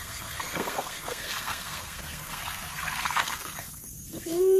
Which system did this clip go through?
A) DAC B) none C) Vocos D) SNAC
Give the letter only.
D